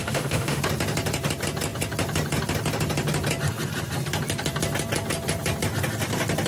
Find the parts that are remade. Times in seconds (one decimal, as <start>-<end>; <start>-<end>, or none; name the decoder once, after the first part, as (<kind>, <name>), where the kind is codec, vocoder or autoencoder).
0.0-0.6 (autoencoder, DAC-VAE)